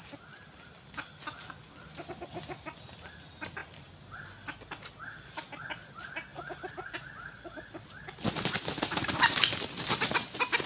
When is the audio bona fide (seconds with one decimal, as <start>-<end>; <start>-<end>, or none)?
0.0-10.7